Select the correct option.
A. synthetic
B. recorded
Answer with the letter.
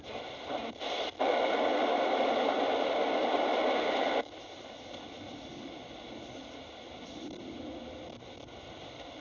B